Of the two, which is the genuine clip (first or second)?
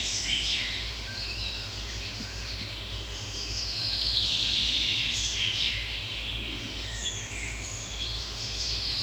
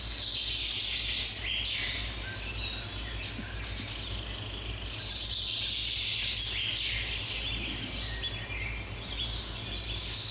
second